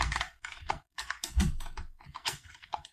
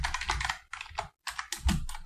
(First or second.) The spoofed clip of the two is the first